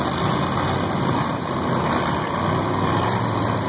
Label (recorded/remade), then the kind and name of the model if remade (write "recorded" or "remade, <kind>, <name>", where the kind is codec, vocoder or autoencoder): remade, vocoder, BigVGAN v2